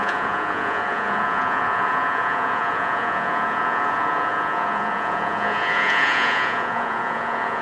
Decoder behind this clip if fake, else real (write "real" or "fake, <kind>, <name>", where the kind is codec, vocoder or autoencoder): fake, vocoder, Vocos